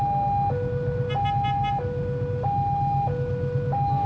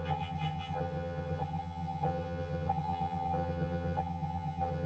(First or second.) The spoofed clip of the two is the second